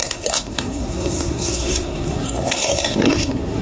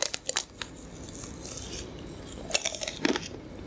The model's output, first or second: first